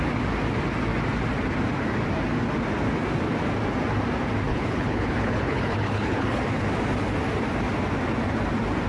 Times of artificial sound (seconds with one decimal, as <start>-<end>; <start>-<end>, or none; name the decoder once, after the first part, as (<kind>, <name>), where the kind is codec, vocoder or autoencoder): 4.5-6.4 (codec, HILCodec)